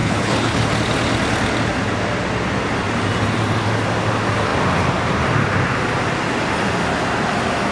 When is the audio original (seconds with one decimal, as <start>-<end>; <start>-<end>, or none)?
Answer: 0.7-7.7